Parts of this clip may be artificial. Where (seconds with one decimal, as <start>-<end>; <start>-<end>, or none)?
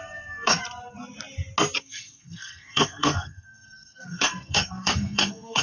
0.0-0.6; 1.8-5.6